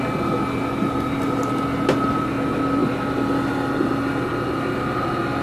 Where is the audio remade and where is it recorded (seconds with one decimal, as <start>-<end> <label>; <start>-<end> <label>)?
0.0-5.4 recorded